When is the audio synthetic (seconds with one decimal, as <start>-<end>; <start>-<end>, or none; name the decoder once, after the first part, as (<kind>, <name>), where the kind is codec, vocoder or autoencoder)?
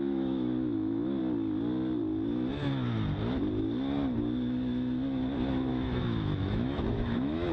0.0-1.2 (autoencoder, DAC-VAE); 5.7-7.5